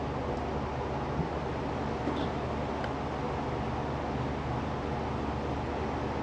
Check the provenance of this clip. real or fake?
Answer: real